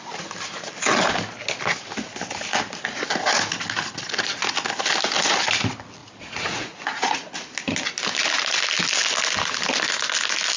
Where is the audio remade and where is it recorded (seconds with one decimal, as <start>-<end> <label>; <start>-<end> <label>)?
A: 0.0-6.0 recorded; 6.0-7.3 remade; 7.3-10.6 recorded